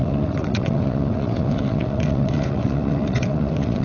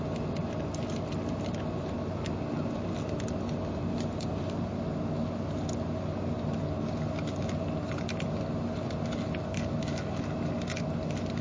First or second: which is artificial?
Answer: first